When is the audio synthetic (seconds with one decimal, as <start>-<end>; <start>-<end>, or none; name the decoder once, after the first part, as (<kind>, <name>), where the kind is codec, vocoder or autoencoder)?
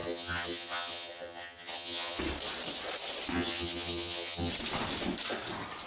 0.0-2.2 (vocoder, HiFi-GAN); 3.3-4.5